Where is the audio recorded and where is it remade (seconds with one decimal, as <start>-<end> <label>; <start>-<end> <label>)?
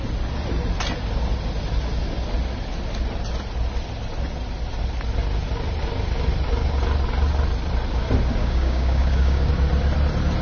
0.0-8.4 recorded; 8.4-9.5 remade; 9.5-10.4 recorded